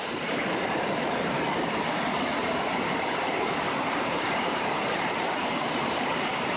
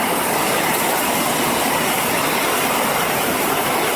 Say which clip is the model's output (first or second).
first